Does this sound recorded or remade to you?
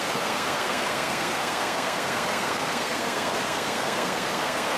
remade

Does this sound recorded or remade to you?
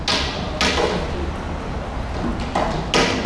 recorded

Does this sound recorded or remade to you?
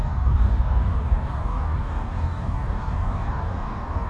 remade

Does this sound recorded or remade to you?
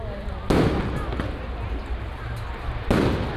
recorded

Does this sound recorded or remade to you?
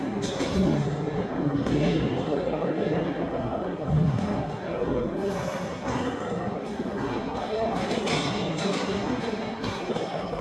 remade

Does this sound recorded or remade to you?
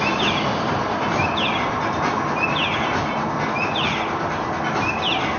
recorded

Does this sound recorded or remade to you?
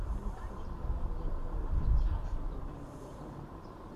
remade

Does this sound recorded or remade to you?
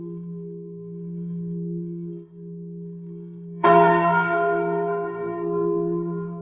remade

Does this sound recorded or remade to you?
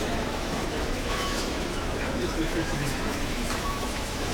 remade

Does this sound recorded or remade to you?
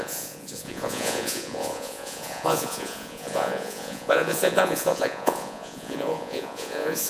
remade